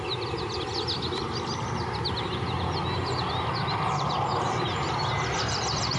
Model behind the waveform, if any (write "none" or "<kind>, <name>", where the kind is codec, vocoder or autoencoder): none